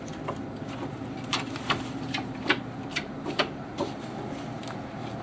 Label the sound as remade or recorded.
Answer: recorded